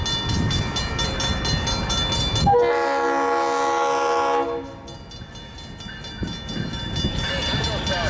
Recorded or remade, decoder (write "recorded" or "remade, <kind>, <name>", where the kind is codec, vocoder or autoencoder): recorded